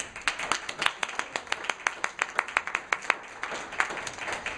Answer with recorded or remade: recorded